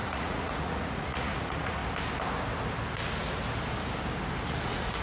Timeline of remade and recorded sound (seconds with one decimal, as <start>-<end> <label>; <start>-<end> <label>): 0.0-1.8 remade; 1.8-4.5 recorded; 4.5-5.0 remade